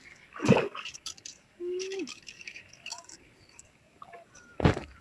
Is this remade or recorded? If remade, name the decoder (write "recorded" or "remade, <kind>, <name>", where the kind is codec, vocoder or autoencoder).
remade, codec, DAC